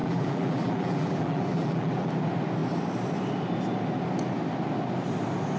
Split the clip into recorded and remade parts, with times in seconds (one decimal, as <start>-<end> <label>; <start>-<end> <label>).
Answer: 0.0-2.1 remade; 2.1-5.6 recorded